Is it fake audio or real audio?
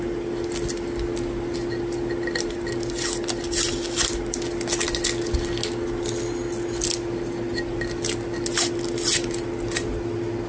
real